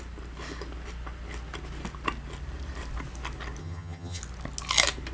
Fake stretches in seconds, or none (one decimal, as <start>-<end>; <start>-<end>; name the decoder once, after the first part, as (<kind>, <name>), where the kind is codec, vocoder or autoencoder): 3.6-4.2 (vocoder, HiFi-GAN)